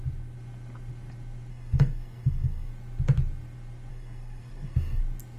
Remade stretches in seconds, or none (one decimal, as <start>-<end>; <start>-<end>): 1.5-2.7; 3.9-5.0